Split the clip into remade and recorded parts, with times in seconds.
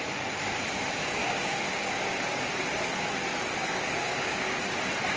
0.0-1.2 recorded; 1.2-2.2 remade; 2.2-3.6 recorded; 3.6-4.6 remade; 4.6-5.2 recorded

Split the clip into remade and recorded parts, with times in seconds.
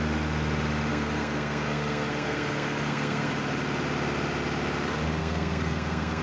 0.0-0.9 recorded; 0.9-3.3 remade; 3.3-5.2 recorded; 5.2-6.2 remade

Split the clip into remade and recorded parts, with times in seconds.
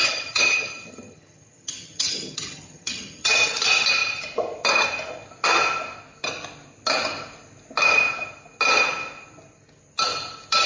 0.0-3.5 remade; 3.5-10.7 recorded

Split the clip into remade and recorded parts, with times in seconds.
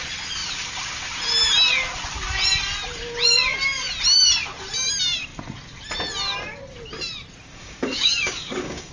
0.0-7.4 recorded; 7.4-8.9 remade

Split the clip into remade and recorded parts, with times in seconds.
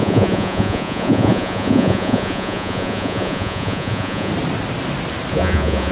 0.0-4.3 remade; 4.3-5.3 recorded; 5.3-5.9 remade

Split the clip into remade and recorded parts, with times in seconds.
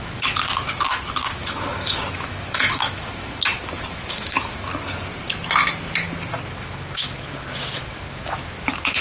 0.0-4.7 remade; 4.7-6.5 recorded; 6.5-9.0 remade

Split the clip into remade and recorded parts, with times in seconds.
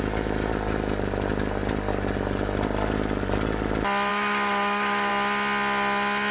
0.0-0.5 remade; 0.5-4.1 recorded; 4.1-5.1 remade; 5.1-6.3 recorded